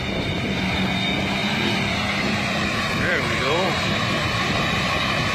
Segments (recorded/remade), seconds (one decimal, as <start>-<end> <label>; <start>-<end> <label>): 0.0-1.4 recorded; 1.4-4.6 remade; 4.6-5.3 recorded